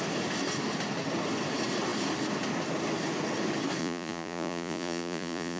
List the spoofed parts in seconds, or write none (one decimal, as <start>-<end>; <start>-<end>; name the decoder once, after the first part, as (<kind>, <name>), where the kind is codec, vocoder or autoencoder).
3.8-5.6 (vocoder, Vocos)

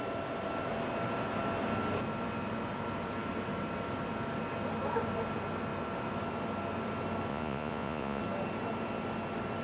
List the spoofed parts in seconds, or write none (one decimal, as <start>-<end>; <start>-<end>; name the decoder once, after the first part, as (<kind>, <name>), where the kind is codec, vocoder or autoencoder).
7.3-8.2 (vocoder, Vocos)

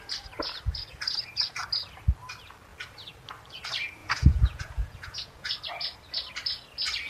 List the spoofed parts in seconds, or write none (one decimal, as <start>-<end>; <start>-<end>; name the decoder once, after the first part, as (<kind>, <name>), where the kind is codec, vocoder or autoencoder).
4.0-5.5 (vocoder, Vocos)

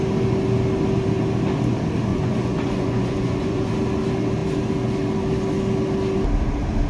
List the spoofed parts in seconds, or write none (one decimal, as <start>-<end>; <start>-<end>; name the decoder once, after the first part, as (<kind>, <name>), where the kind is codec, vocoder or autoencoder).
2.1-3.7 (vocoder, Vocos)

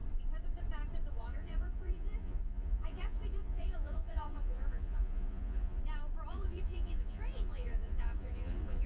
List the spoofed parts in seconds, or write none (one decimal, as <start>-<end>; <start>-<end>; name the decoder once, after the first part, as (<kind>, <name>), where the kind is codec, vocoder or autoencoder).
1.1-5.8 (vocoder, Vocos); 6.3-8.9

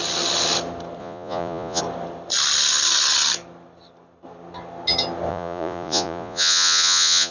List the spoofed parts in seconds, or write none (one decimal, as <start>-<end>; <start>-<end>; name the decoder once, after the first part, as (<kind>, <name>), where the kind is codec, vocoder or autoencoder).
1.0-1.8 (vocoder, Vocos); 5.3-7.3